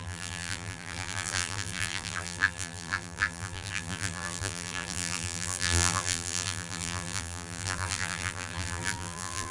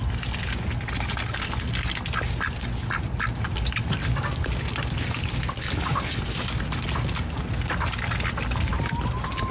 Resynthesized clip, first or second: first